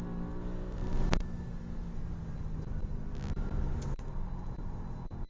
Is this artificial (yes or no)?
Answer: no